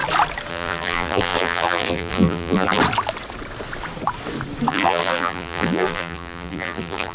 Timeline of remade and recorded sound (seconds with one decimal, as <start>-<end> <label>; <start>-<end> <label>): 0.0-0.5 recorded; 0.5-2.8 remade; 2.8-4.7 recorded; 4.7-7.1 remade